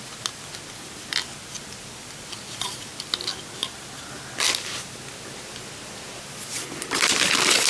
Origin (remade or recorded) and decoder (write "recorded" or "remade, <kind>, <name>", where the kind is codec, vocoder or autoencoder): recorded